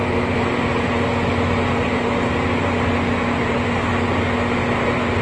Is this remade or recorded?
recorded